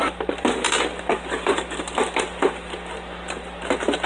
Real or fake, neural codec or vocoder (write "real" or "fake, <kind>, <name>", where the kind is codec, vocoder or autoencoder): real